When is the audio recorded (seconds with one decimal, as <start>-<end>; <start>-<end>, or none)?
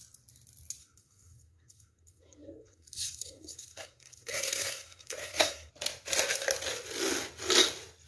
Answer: 0.0-0.8; 5.7-8.1